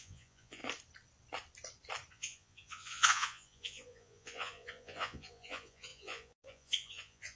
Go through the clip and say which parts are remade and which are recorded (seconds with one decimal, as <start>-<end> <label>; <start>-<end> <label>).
0.0-0.6 remade; 0.6-2.1 recorded; 2.1-7.4 remade